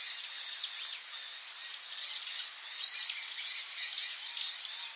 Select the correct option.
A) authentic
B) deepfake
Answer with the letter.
A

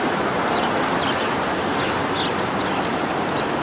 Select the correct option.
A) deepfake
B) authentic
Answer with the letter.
B